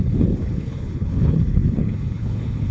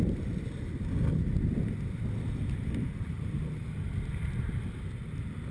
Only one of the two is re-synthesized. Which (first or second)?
first